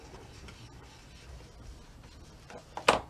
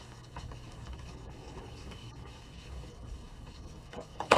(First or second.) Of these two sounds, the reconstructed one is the second